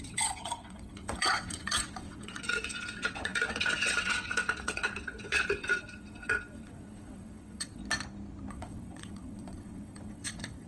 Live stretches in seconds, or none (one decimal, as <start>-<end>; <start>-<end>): 7.8-8.5